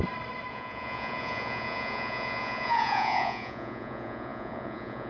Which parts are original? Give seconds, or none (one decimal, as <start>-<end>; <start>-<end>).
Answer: 0.0-0.5